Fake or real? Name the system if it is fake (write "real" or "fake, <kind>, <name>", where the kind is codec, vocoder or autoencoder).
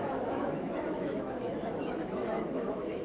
fake, autoencoder, DAC-VAE